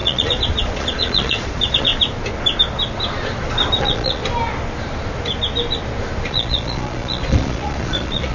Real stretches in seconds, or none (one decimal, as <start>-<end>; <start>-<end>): 1.9-3.8; 4.2-6.3